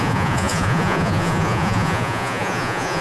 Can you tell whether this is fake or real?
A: fake